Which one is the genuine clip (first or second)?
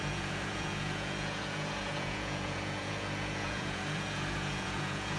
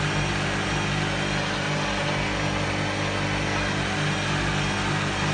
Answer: second